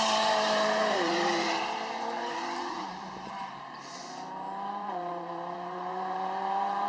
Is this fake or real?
fake